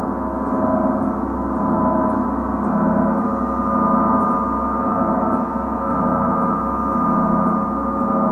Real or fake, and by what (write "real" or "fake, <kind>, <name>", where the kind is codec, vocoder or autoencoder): real